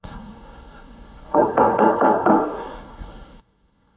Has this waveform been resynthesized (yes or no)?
yes